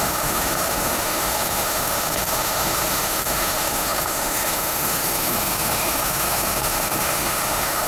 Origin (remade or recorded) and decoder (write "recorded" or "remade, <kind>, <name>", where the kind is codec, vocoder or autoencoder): remade, autoencoder, DAC-VAE